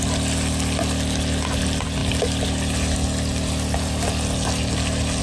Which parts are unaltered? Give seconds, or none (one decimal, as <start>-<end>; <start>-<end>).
0.0-5.2